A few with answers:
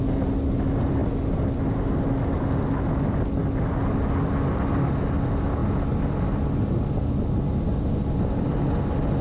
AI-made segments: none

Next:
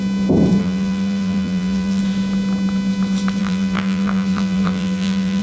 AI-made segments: 0.6-2.0 (vocoder, BigVGAN v2); 3.4-5.4

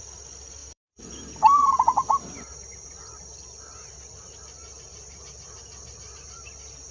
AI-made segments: 0.6-4.0 (vocoder, BigVGAN v2); 4.6-6.9

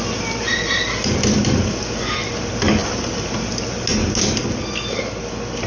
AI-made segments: 0.5-1.8 (vocoder, BigVGAN v2); 3.9-4.5